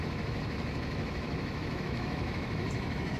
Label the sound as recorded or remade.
remade